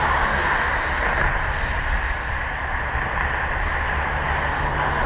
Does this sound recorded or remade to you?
recorded